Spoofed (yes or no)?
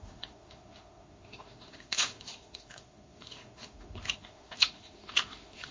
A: yes